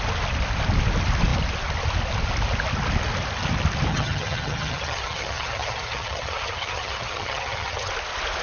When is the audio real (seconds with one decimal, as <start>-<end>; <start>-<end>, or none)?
0.0-3.9; 7.9-8.4